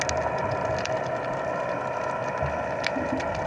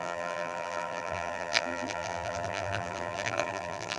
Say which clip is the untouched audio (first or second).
first